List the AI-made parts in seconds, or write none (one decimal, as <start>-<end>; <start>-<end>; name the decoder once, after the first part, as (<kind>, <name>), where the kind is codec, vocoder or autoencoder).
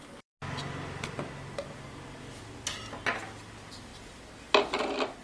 none